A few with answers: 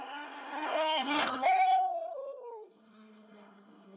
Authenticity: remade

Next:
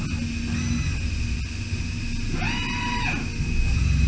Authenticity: recorded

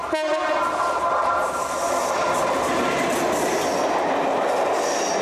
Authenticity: recorded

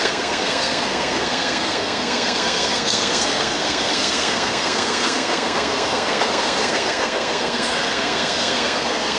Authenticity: remade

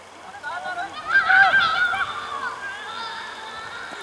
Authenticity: recorded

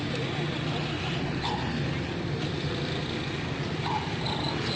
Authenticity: recorded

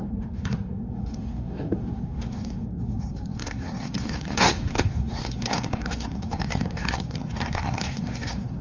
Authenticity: remade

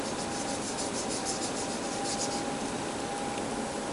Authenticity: recorded